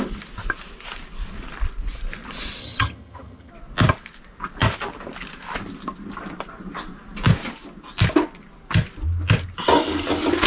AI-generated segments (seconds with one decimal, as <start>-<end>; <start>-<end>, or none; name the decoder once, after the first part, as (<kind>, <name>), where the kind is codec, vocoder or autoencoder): 2.6-3.5 (vocoder, HiFi-GAN)